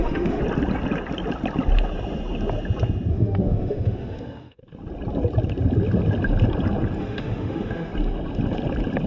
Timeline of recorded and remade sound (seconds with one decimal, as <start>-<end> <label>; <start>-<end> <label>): 0.0-0.4 remade; 0.4-3.1 recorded; 3.1-4.6 remade; 4.6-7.0 recorded; 7.0-7.9 remade; 7.9-9.1 recorded